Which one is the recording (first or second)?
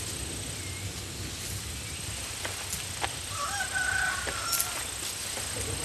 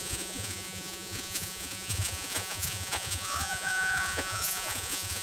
first